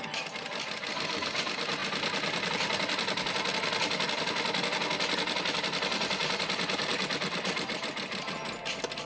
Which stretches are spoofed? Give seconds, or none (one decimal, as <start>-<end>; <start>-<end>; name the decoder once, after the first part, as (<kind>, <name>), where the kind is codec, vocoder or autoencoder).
none